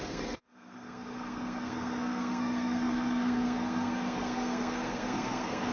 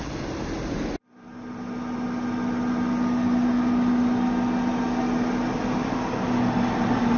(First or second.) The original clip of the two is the second